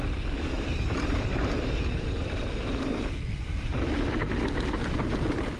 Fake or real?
real